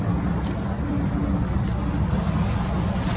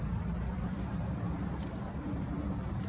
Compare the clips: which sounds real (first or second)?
first